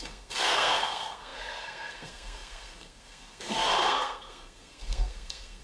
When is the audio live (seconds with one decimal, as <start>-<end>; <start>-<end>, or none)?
none